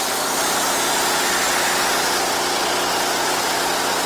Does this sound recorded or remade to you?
recorded